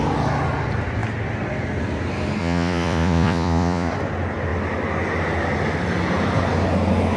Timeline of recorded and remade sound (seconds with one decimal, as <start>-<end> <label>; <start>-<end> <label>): 0.0-2.4 recorded; 2.4-3.9 remade; 3.9-7.2 recorded